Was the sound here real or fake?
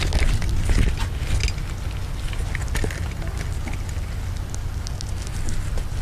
real